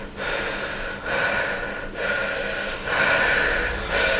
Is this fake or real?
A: real